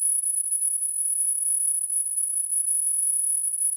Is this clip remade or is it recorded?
remade